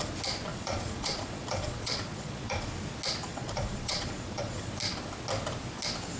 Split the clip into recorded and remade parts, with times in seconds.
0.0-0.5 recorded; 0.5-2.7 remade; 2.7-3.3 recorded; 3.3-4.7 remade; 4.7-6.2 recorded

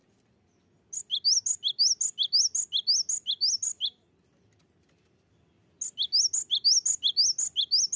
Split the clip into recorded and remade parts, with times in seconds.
0.0-8.0 recorded

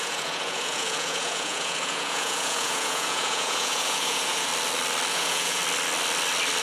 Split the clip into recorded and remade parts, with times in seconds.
0.0-4.5 remade; 4.5-5.1 recorded; 5.1-5.6 remade; 5.6-6.6 recorded

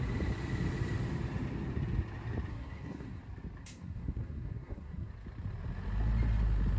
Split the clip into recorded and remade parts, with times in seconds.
0.0-2.5 recorded; 2.5-3.2 remade; 3.2-3.6 recorded; 3.6-5.1 remade; 5.1-6.8 recorded

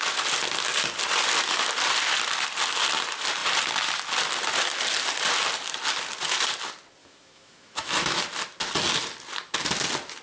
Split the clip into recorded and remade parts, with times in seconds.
0.0-7.0 recorded; 7.0-8.2 remade; 8.2-10.2 recorded

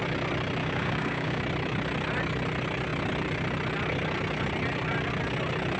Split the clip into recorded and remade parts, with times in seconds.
0.0-0.6 recorded; 0.6-1.4 remade; 1.4-5.8 recorded

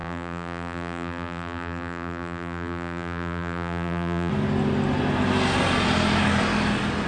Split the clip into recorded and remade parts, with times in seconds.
0.0-4.3 remade; 4.3-7.1 recorded